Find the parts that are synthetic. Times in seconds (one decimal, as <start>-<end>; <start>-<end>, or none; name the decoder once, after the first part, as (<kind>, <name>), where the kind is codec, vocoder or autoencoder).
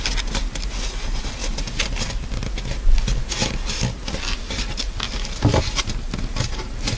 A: none